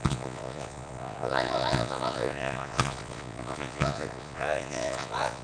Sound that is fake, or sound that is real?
fake